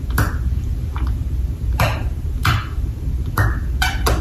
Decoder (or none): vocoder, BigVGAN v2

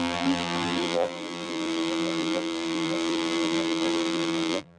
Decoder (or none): vocoder, BigVGAN v2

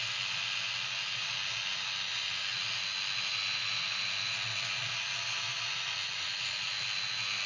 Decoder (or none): none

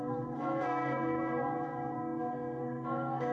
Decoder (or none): codec, SNAC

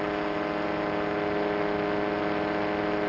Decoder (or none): none